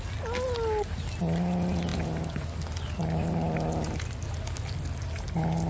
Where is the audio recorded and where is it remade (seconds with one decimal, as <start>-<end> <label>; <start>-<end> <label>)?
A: 0.0-5.7 recorded